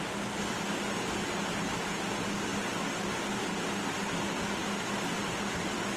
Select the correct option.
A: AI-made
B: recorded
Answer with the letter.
B